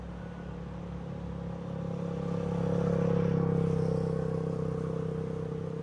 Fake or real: real